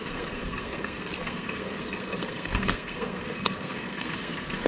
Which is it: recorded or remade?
remade